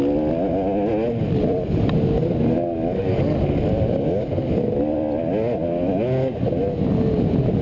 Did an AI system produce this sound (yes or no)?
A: no